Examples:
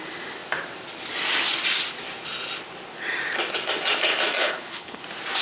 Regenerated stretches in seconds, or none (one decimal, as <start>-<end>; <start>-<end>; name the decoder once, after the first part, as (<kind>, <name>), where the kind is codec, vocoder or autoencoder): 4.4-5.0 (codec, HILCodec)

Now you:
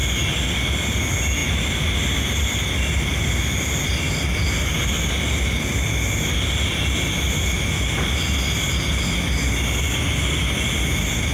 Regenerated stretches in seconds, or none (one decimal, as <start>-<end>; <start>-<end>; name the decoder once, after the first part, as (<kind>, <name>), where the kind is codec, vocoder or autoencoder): none

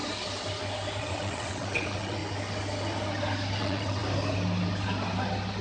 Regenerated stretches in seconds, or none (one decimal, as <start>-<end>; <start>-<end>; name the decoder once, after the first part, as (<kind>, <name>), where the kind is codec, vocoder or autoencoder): 1.0-2.2 (vocoder, WaveNeXt); 3.6-4.0

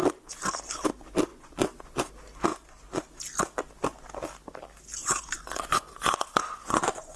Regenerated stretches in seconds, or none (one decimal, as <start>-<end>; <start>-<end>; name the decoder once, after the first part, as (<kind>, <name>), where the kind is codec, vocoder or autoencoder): 1.3-2.1 (vocoder, Vocos); 2.5-3.1; 5.0-7.2

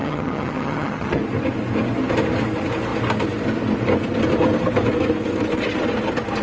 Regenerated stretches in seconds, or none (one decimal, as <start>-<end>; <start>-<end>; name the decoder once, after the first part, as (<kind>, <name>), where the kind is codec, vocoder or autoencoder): 0.0-1.2 (vocoder, HiFi-GAN)

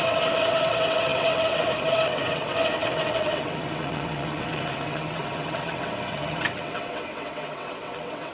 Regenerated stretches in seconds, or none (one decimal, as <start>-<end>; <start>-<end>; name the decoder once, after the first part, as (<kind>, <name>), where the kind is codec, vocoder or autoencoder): 0.0-8.3 (vocoder, WaveNeXt)